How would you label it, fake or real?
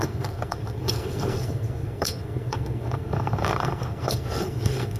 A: fake